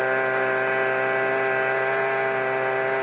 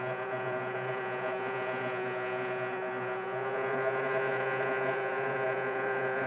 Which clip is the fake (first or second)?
second